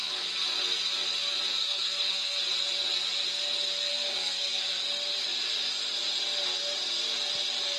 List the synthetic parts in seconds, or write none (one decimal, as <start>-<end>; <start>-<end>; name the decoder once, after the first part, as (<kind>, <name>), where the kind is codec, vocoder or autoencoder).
1.6-2.4 (codec, SNAC); 3.9-4.8